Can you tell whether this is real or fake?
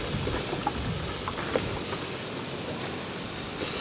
real